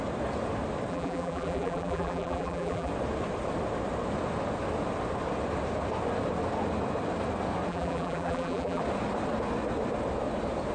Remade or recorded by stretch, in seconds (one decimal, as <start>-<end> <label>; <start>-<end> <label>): 0.0-0.9 recorded; 0.9-2.9 remade; 2.9-7.7 recorded; 7.7-8.8 remade; 8.8-10.7 recorded